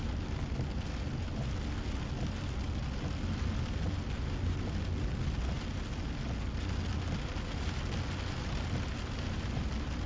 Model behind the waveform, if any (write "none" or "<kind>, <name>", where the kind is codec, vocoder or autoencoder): none